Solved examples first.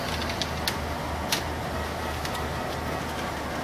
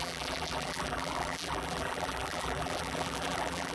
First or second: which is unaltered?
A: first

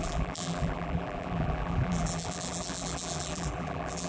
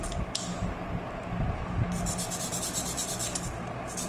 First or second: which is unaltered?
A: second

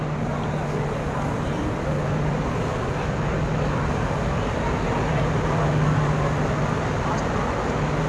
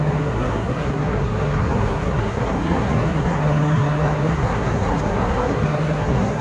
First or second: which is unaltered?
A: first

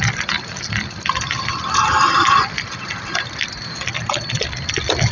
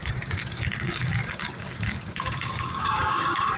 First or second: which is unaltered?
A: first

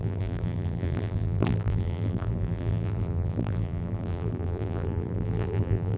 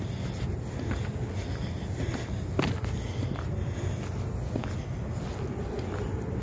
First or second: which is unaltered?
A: second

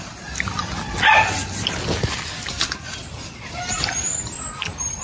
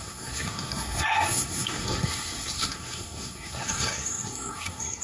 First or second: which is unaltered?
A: first